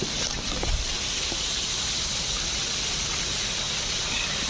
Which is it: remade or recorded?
recorded